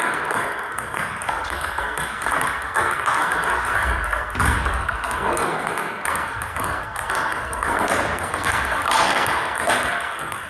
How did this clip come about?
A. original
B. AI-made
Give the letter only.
B